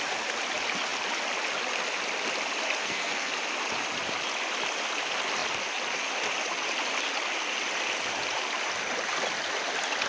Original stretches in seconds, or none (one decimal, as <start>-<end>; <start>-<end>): 0.0-2.8; 3.3-10.1